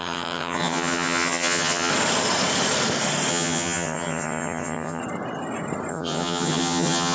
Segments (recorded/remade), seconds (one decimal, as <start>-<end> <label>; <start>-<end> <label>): 0.0-1.9 remade; 1.9-3.3 recorded; 3.3-5.0 remade; 5.0-5.9 recorded; 5.9-7.1 remade